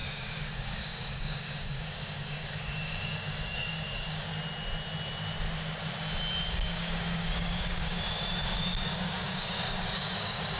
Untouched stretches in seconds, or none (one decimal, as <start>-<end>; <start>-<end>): 4.3-6.5